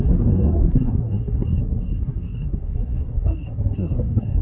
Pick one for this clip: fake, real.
fake